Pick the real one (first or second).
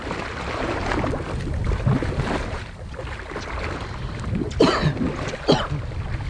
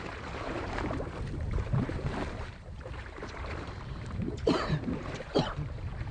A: first